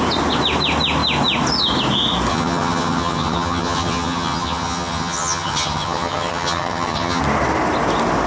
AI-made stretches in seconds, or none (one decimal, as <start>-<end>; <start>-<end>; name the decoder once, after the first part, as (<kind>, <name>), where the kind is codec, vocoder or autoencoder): 2.3-7.2 (vocoder, HiFi-GAN)